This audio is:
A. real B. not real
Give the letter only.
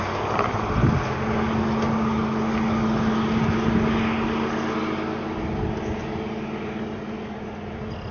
A